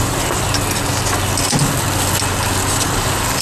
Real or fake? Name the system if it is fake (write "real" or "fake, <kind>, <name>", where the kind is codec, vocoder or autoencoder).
real